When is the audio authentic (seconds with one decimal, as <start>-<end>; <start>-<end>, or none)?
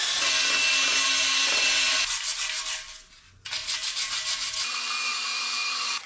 0.0-3.6